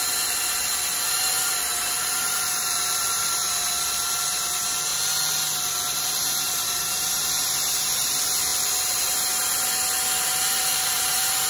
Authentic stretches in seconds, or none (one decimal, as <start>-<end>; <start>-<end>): 4.9-6.0; 8.5-10.2